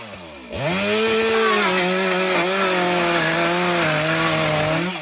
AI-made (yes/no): no